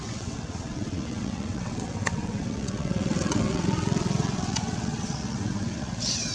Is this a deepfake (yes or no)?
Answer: yes